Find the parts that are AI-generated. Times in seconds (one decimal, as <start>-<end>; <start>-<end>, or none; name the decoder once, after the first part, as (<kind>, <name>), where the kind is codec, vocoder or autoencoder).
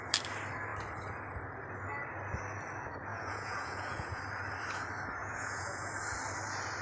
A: 3.1-4.2 (vocoder, Vocos); 5.2-5.9